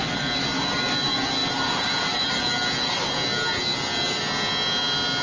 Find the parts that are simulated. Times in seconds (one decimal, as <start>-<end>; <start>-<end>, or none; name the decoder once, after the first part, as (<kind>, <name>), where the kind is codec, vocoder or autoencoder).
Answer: none